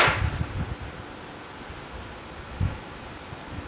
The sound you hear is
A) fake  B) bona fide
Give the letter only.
B